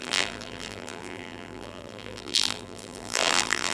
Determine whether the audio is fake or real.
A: fake